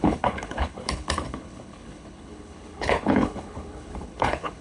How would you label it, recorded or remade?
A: remade